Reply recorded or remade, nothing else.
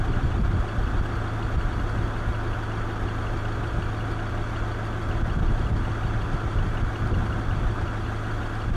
recorded